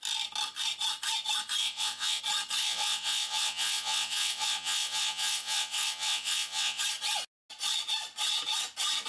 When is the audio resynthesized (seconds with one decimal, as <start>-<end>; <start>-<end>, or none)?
1.6-2.2; 2.6-6.8